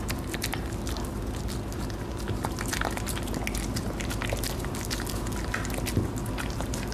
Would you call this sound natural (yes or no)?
yes